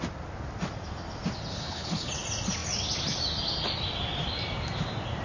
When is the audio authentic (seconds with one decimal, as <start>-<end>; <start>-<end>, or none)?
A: 0.0-1.5; 2.1-5.2